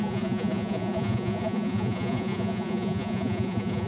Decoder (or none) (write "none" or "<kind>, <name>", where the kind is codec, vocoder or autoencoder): vocoder, Vocos